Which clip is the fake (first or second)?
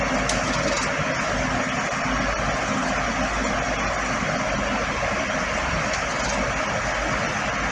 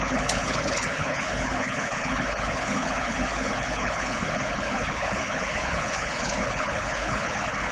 second